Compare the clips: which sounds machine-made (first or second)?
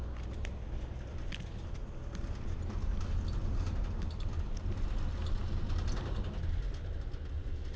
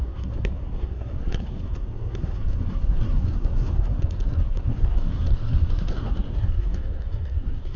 second